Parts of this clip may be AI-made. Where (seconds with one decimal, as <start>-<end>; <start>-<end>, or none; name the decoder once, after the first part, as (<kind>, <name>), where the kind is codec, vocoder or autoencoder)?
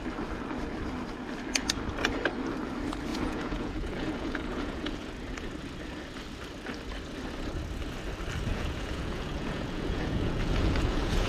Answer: 3.1-5.1 (vocoder, Vocos); 8.5-11.3